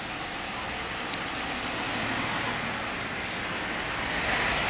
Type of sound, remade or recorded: recorded